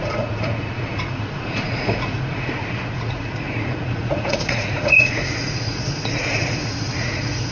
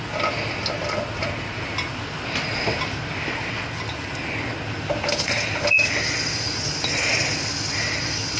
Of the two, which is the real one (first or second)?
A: second